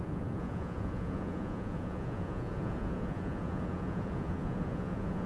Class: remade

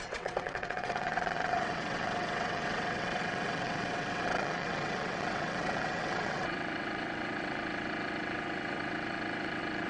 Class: remade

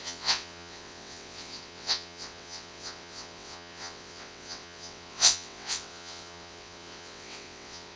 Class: remade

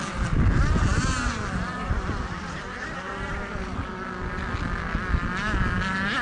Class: recorded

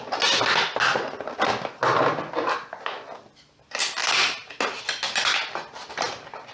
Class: recorded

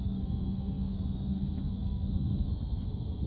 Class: remade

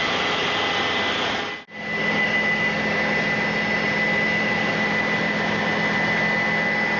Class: recorded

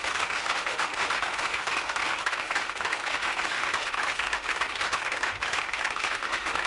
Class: remade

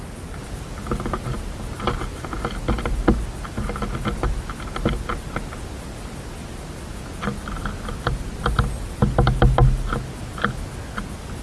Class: recorded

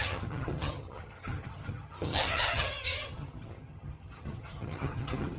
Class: remade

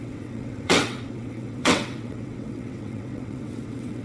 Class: remade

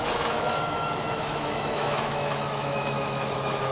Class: remade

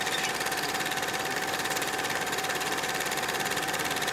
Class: remade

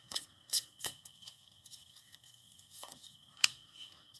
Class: remade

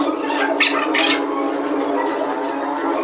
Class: recorded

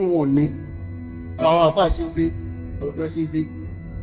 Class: remade